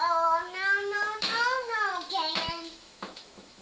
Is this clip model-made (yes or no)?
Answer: yes